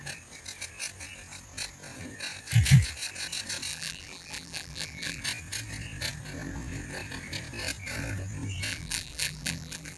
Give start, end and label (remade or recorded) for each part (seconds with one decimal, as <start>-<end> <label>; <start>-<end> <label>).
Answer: 0.0-3.7 recorded; 3.7-5.2 remade; 5.2-8.7 recorded; 8.7-10.0 remade